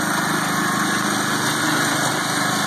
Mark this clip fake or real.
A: real